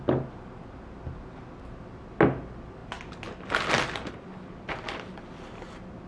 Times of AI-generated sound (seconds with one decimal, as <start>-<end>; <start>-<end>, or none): none